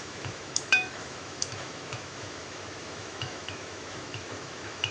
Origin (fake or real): fake